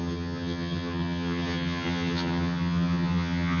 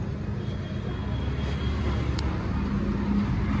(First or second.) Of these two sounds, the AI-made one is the first